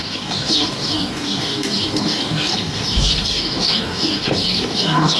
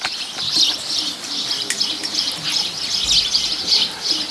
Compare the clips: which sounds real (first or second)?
second